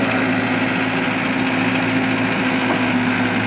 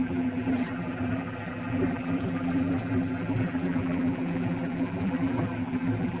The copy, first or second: second